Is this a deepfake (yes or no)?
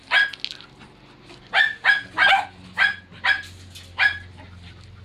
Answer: no